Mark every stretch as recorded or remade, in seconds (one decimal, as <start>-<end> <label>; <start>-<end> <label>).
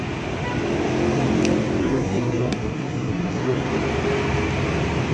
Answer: 0.0-1.8 recorded; 1.8-3.7 remade; 3.7-5.1 recorded